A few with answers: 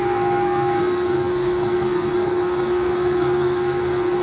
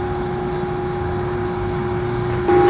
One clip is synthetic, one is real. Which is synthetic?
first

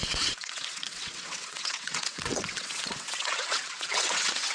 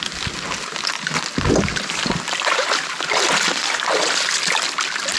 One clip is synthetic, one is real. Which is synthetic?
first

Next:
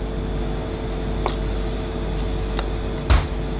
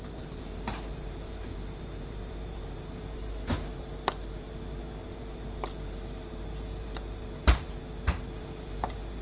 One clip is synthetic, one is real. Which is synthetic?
second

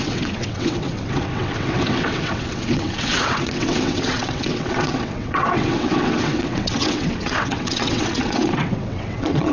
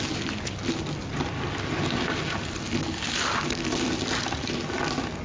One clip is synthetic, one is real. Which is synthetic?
first